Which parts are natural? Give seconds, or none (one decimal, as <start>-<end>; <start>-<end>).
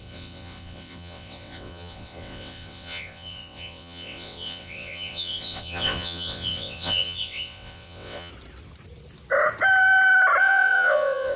8.3-10.4